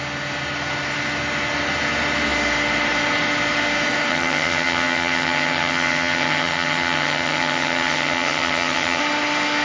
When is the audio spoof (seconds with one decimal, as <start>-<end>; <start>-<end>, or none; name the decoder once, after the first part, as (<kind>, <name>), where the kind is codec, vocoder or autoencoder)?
4.1-9.0 (vocoder, HiFi-GAN)